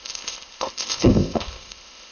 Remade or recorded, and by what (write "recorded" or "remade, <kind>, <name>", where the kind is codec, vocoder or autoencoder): remade, codec, ZipCodec